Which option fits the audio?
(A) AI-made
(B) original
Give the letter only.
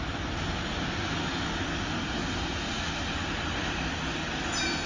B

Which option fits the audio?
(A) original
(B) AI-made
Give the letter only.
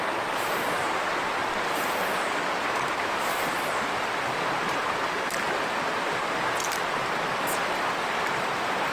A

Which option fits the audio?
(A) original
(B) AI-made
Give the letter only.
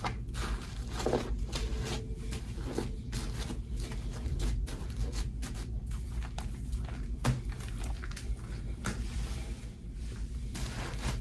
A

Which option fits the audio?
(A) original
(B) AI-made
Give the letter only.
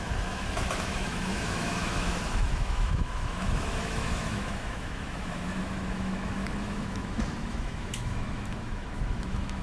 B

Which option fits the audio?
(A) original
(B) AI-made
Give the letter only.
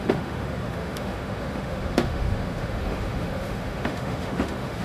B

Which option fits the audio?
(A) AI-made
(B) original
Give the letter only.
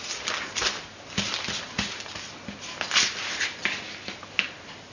B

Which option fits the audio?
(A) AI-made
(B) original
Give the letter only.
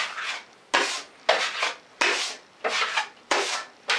B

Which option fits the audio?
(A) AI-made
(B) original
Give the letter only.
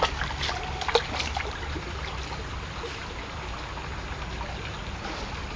B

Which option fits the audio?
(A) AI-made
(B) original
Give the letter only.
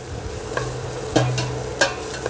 B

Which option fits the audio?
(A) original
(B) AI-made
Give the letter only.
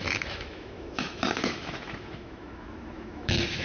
B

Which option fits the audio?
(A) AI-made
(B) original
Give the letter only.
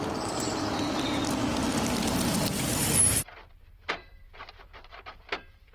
B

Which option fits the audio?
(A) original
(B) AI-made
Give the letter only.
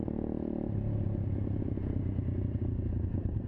A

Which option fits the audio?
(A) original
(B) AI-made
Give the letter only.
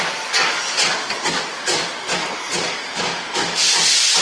A